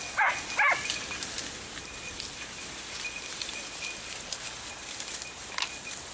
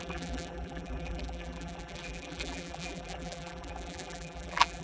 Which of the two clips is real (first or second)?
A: first